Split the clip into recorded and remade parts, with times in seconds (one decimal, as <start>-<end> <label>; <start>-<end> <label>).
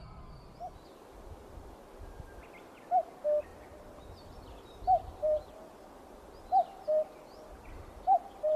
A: 0.0-3.5 recorded; 3.5-5.5 remade; 5.5-8.6 recorded